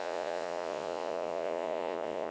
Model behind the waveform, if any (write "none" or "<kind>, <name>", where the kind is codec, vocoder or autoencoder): vocoder, Vocos